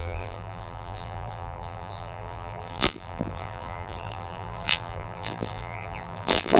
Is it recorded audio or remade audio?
remade